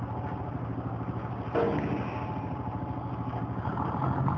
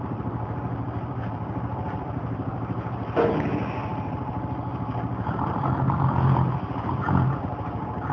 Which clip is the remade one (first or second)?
second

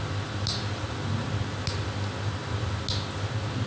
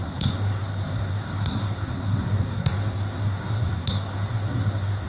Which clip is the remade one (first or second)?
second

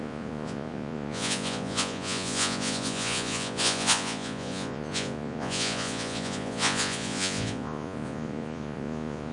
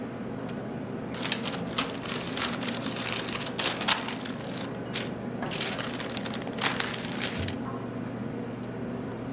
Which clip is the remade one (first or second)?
first